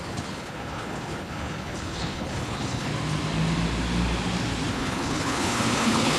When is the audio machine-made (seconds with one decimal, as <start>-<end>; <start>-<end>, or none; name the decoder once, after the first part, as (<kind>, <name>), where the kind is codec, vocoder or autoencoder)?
0.0-2.9 (codec, HILCodec); 4.7-6.2